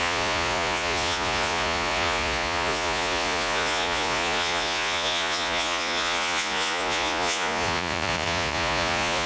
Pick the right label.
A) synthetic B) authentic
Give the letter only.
A